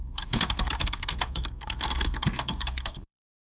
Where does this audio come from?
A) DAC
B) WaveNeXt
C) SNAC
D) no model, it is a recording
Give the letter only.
C